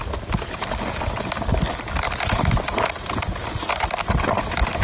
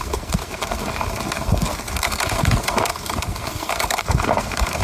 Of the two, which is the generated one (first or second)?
second